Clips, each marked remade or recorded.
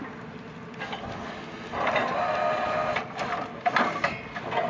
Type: recorded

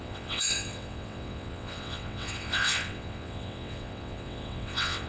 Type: remade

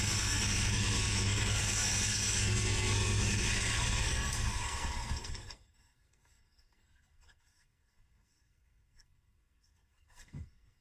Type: remade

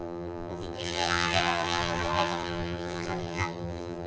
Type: remade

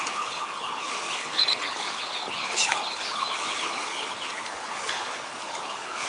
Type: remade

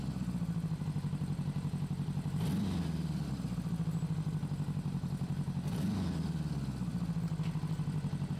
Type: recorded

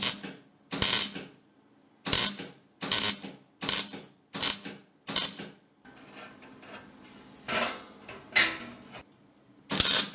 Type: recorded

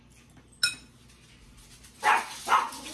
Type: recorded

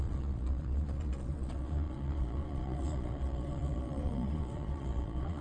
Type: remade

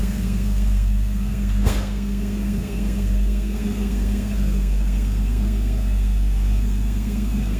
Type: remade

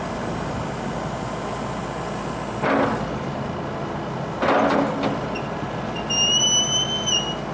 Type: recorded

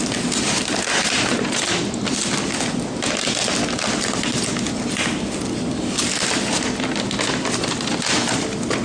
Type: recorded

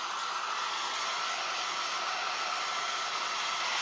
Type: recorded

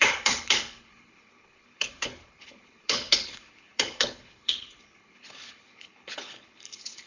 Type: remade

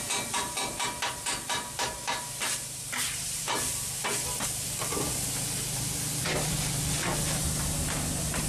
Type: recorded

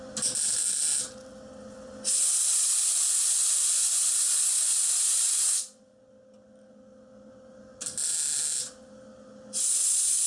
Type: recorded